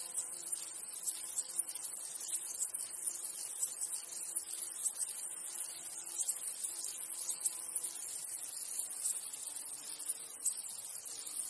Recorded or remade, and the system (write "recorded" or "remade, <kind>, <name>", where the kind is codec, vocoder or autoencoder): recorded